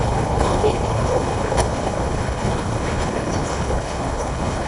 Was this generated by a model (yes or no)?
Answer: yes